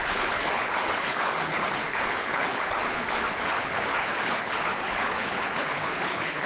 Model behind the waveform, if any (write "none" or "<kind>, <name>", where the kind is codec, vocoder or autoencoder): codec, HILCodec